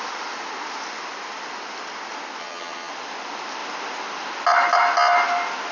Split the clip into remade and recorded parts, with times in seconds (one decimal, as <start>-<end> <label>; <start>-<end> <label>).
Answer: 0.0-2.4 recorded; 2.4-2.9 remade; 2.9-5.7 recorded